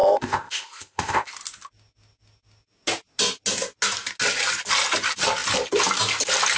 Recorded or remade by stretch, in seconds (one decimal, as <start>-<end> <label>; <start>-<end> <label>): 0.0-1.3 remade; 1.3-6.6 recorded